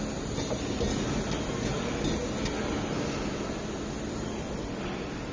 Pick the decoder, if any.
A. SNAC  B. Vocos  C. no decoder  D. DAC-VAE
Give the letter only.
C